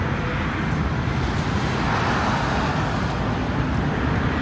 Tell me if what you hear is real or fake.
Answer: real